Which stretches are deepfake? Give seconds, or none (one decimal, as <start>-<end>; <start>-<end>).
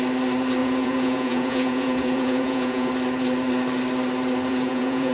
0.6-2.9; 4.5-5.1